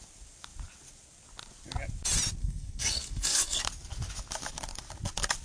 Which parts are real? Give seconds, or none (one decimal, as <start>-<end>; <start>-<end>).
0.0-2.4; 3.6-5.4